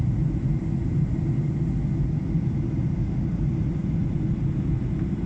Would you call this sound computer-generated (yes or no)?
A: no